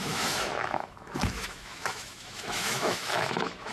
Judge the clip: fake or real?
fake